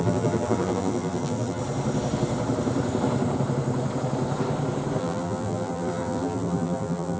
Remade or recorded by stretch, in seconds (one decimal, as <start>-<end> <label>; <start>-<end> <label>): 0.0-1.6 remade; 1.6-5.0 recorded; 5.0-7.2 remade